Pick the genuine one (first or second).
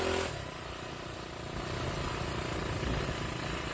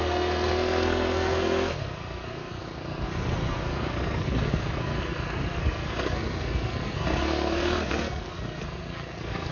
first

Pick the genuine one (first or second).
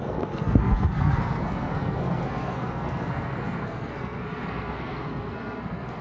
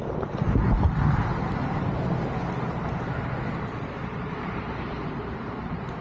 second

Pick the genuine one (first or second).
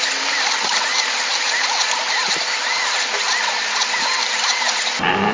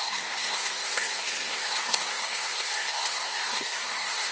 first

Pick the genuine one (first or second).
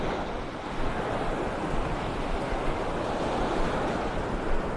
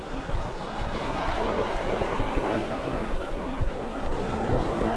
first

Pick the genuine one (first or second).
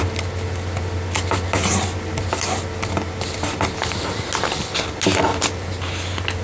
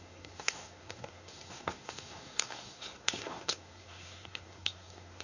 first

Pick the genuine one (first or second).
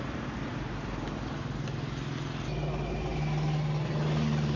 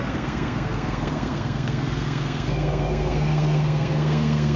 first